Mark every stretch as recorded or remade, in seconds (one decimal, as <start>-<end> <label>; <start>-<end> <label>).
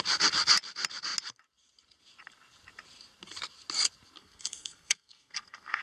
0.0-4.2 recorded; 4.2-5.8 remade